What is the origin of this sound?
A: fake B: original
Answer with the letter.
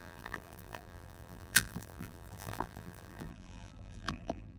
A